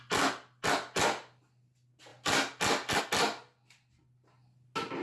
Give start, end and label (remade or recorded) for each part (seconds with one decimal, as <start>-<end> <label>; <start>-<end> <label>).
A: 0.0-5.0 recorded